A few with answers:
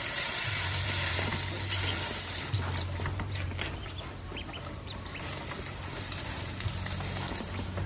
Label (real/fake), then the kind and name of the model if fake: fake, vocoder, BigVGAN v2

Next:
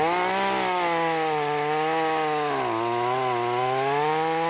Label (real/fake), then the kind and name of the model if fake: real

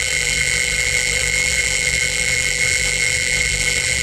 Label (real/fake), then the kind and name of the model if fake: fake, vocoder, BigVGAN v2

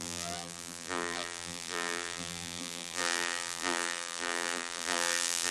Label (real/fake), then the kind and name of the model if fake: fake, vocoder, BigVGAN v2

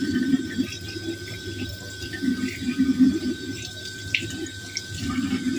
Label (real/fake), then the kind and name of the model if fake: fake, vocoder, BigVGAN v2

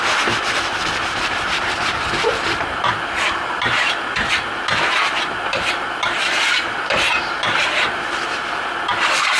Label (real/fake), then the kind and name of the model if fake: fake, vocoder, BigVGAN v2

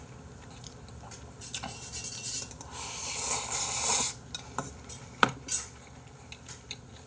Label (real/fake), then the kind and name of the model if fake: fake, vocoder, BigVGAN v2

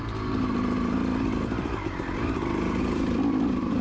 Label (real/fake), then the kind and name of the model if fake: fake, vocoder, BigVGAN v2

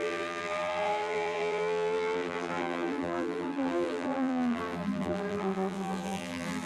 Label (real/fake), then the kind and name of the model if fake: fake, vocoder, BigVGAN v2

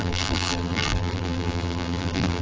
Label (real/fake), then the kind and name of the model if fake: fake, vocoder, BigVGAN v2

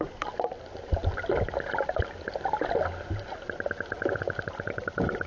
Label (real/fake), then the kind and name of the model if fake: real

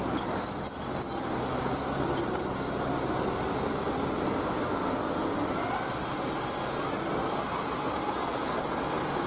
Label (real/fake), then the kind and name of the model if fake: real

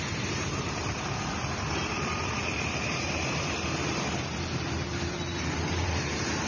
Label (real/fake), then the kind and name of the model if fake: fake, vocoder, BigVGAN v2